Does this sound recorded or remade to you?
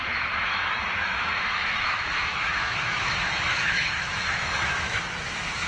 remade